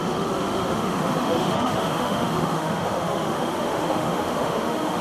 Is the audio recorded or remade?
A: remade